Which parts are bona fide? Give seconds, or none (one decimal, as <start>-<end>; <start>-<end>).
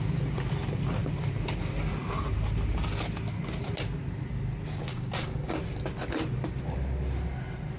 0.0-4.9; 5.6-7.8